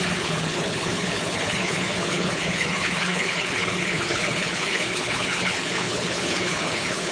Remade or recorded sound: remade